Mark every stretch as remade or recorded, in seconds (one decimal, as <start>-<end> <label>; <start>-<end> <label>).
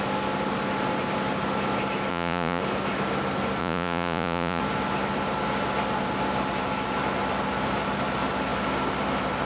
0.0-2.1 recorded; 2.1-2.6 remade; 2.6-3.6 recorded; 3.6-4.6 remade; 4.6-9.5 recorded